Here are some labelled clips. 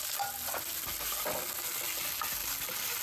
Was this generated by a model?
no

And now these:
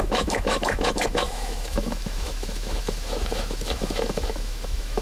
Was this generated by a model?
yes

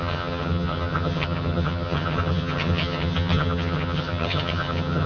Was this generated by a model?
yes